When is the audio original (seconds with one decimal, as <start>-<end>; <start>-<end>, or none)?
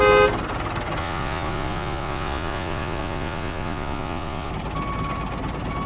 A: 0.0-1.0; 4.5-5.9